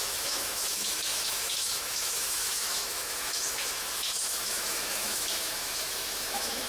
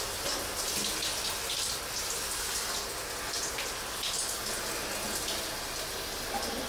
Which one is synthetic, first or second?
first